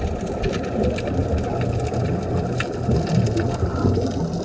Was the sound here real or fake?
real